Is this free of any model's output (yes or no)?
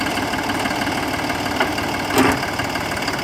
yes